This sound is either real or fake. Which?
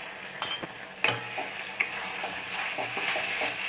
real